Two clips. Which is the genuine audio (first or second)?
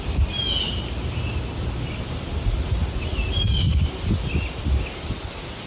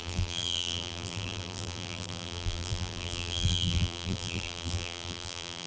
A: first